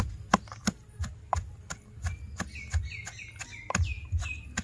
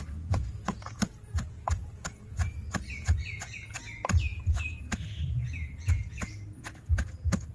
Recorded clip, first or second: first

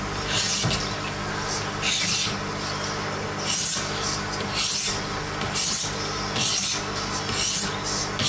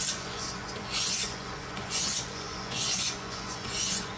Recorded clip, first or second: first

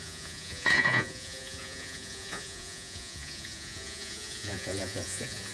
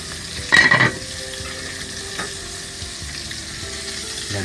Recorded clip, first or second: second